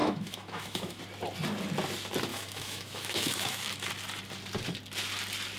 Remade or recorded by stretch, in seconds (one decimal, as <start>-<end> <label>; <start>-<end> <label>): 0.0-1.0 remade; 1.0-2.3 recorded; 2.3-3.9 remade; 3.9-5.6 recorded